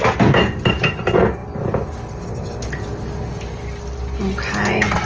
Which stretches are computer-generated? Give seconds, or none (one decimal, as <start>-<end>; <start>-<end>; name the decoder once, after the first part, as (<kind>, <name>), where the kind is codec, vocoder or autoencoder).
none